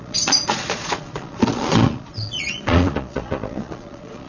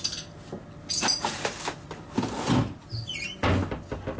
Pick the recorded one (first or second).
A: second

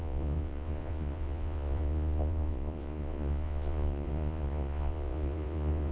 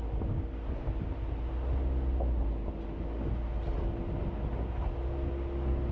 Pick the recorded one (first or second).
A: second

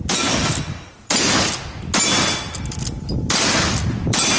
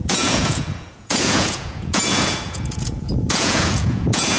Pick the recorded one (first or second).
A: first